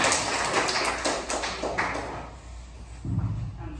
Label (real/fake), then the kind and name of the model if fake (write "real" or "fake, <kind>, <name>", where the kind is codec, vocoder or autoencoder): real